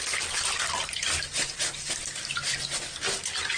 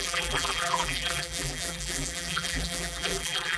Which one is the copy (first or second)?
second